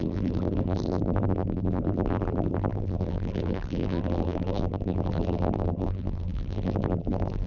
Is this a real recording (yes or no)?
no